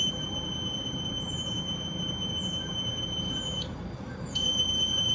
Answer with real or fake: fake